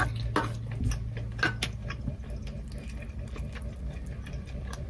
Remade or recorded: recorded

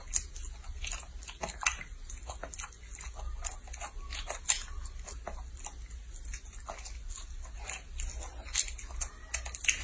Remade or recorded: recorded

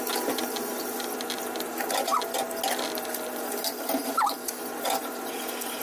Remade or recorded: recorded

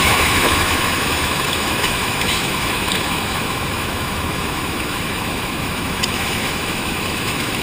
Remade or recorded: remade